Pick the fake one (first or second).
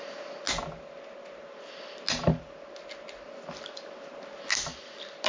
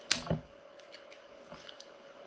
second